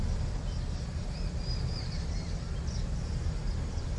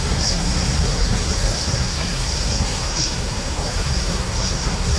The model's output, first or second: second